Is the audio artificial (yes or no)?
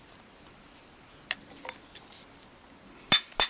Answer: no